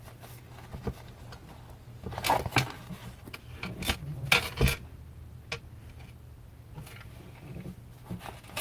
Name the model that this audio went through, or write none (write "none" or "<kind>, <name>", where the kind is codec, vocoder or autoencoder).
none